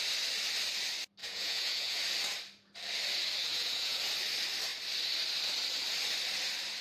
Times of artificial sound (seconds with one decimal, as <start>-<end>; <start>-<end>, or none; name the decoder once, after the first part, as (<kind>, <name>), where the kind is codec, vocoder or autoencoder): 1.2-2.0 (vocoder, Vocos); 3.5-4.0